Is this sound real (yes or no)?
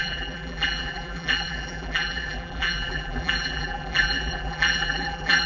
no